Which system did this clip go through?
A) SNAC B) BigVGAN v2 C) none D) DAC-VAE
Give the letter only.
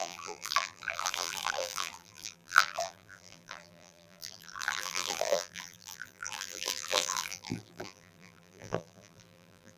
B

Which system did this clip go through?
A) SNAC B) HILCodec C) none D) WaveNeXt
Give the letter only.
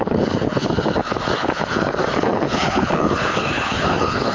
B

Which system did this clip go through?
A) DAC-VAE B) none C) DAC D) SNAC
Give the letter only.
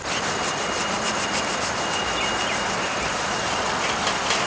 B